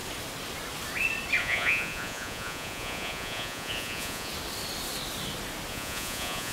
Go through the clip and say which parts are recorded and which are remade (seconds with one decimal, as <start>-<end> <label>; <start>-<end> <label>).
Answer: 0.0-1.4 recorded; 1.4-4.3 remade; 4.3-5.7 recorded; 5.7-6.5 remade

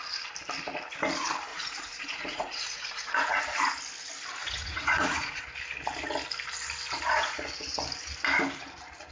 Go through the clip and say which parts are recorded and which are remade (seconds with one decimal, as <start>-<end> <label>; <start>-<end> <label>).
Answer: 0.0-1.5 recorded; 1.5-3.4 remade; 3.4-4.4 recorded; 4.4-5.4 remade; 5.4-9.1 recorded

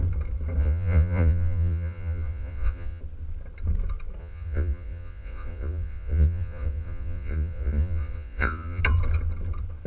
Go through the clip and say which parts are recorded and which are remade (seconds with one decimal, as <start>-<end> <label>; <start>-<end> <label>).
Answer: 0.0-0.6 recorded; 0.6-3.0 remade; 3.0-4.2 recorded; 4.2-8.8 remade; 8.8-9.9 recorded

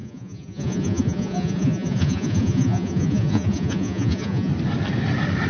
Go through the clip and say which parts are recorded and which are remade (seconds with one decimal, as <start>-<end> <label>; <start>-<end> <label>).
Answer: 0.0-4.5 remade; 4.5-5.5 recorded